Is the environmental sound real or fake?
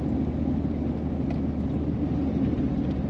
real